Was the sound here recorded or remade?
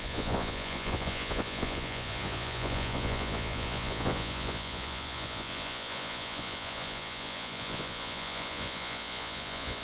remade